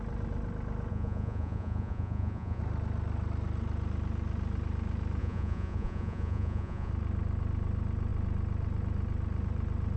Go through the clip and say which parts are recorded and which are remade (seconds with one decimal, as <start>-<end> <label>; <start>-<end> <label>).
0.0-0.9 recorded; 0.9-2.6 remade; 2.6-5.2 recorded; 5.2-6.9 remade; 6.9-10.0 recorded

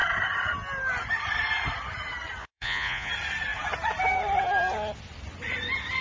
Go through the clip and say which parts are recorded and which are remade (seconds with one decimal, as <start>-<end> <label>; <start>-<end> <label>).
0.0-2.4 recorded; 2.4-3.1 remade; 3.1-6.0 recorded

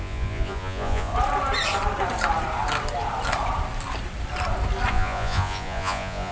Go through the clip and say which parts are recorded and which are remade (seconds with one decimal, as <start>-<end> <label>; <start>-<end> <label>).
0.0-1.1 remade; 1.1-4.9 recorded; 4.9-6.3 remade

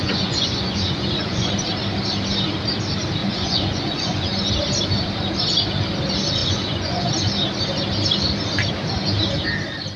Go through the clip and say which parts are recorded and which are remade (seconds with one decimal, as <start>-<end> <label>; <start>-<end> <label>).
0.0-1.7 remade; 1.7-3.2 recorded; 3.2-4.5 remade; 4.5-6.4 recorded; 6.4-7.1 remade; 7.1-10.0 recorded

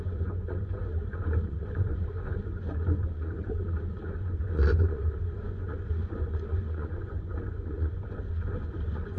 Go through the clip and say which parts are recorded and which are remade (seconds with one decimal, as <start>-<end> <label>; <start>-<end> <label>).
0.0-9.2 remade

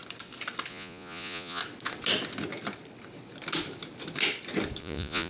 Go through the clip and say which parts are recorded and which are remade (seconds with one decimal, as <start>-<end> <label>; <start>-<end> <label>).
0.0-0.7 recorded; 0.7-1.6 remade; 1.6-4.8 recorded; 4.8-5.3 remade